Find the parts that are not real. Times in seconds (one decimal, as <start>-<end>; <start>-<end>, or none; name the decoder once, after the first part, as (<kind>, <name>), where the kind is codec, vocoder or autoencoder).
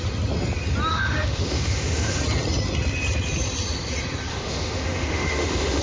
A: 0.9-2.2 (autoencoder, DAC-VAE); 4.3-5.8